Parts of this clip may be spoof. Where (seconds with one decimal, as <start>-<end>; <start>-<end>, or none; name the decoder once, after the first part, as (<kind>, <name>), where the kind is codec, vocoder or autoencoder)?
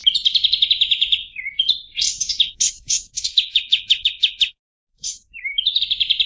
2.1-4.5 (autoencoder, DAC-VAE); 4.9-5.8